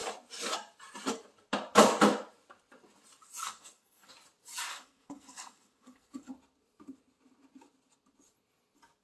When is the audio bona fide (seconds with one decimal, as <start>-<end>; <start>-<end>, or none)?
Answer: 0.0-3.4; 4.1-4.7; 6.3-9.0

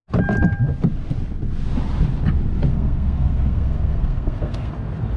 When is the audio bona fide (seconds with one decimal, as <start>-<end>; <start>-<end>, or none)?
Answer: 0.0-2.7; 4.7-5.2

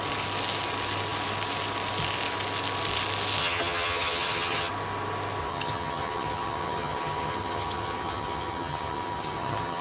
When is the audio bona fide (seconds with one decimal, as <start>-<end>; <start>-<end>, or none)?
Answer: 0.0-3.4; 4.7-5.5

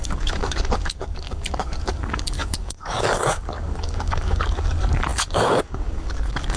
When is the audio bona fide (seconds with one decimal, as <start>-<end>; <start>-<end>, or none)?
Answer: none

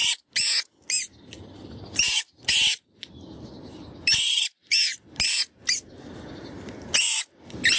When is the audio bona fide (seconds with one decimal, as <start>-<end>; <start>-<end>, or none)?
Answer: 0.0-7.8

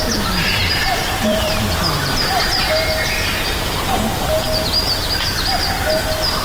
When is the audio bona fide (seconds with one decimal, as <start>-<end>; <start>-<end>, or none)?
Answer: 0.0-0.6; 1.5-6.4